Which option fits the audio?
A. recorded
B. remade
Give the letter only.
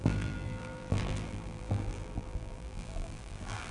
B